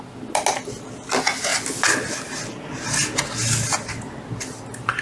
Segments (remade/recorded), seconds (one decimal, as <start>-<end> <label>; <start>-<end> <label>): 0.0-5.0 recorded